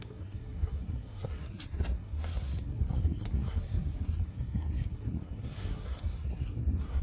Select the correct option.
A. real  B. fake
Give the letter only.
B